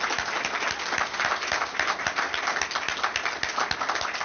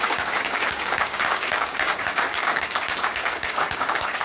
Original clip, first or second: first